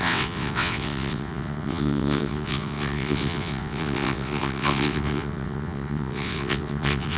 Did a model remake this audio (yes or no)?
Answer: yes